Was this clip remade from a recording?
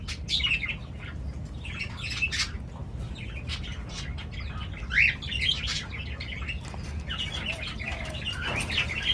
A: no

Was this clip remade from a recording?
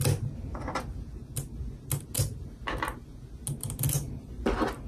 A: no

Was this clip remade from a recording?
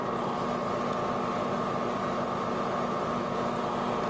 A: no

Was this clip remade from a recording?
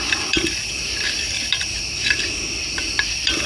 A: yes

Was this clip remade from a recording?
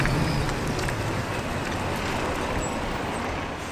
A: no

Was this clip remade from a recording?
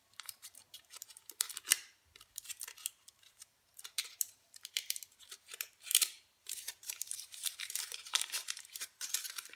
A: yes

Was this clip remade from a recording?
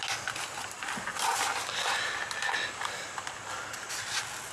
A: no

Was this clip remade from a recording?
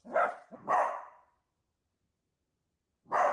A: yes